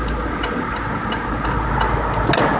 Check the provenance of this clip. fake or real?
real